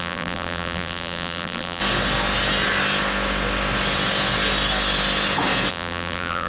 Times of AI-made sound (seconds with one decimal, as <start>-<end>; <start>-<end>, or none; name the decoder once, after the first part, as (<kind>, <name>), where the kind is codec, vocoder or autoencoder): 0.0-1.8 (vocoder, BigVGAN v2); 5.7-6.5